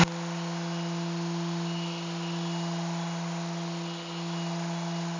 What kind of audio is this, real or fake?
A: real